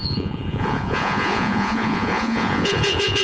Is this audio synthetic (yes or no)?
yes